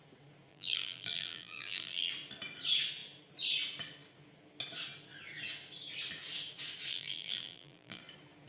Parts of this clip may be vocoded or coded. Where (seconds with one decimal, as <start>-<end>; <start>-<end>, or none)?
0.5-2.1; 6.9-8.0